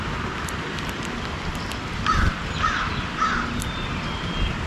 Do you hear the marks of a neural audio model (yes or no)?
no